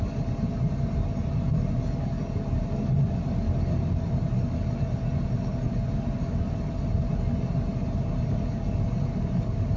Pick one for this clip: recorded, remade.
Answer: recorded